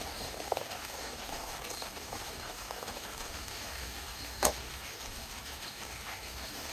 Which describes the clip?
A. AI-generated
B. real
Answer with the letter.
A